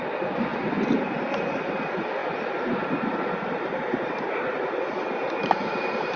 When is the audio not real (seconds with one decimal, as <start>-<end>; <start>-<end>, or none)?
2.2-6.2